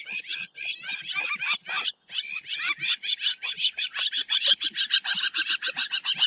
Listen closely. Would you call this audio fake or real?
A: real